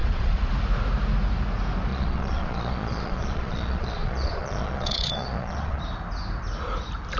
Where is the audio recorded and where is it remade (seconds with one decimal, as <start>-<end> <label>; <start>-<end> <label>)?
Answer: 0.0-0.5 remade; 0.5-1.9 recorded; 1.9-5.8 remade; 5.8-7.2 recorded